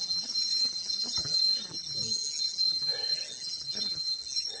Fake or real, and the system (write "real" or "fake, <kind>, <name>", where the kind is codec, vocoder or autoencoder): real